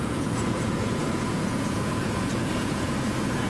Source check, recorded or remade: remade